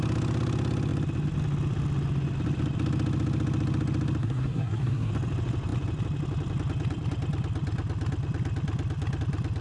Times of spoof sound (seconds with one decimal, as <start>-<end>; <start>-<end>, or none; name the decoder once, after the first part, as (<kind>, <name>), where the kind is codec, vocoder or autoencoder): 4.2-5.1 (codec, SNAC)